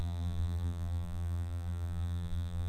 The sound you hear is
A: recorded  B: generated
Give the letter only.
B